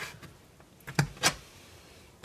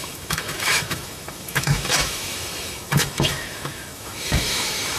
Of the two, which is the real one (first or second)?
first